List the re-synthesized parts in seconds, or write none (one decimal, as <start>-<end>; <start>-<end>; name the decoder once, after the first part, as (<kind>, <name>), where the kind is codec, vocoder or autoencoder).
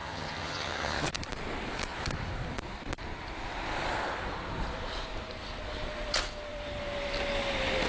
0.0-1.1 (vocoder, HiFi-GAN)